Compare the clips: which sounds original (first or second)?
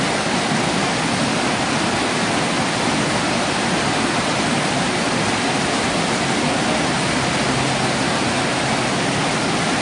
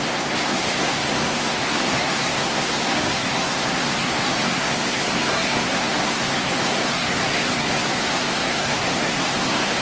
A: first